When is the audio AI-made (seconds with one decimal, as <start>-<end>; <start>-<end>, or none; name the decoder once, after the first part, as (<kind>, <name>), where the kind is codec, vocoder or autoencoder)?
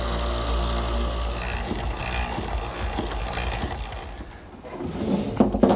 none